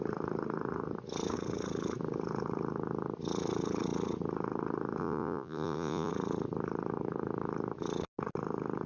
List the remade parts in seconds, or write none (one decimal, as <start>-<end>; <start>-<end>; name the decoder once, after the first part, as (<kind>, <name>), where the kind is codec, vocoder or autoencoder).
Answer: 5.0-6.1 (vocoder, Vocos)